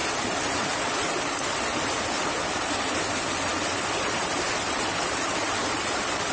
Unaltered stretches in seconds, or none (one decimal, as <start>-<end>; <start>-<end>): 0.0-6.3